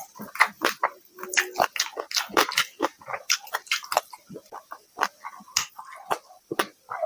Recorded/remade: recorded